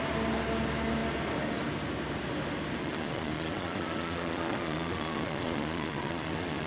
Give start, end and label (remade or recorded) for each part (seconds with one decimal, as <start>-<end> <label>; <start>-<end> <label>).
0.0-2.8 recorded; 2.8-6.7 remade